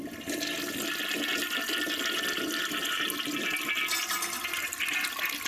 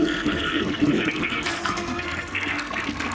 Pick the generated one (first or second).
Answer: second